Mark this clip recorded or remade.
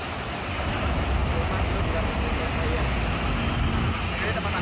recorded